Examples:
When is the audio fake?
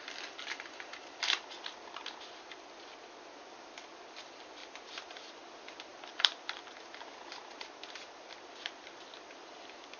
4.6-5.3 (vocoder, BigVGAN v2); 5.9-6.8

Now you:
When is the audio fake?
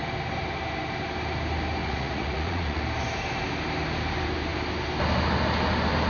1.8-2.8 (vocoder, Vocos)